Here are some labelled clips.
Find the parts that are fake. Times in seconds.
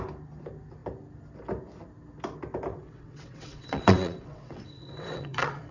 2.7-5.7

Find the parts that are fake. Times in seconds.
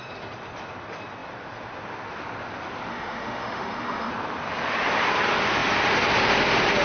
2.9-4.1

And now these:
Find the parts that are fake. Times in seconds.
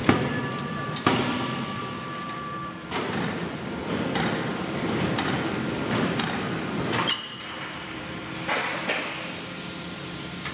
0.0-10.5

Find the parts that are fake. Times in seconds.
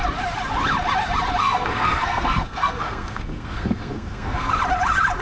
1.4-4.5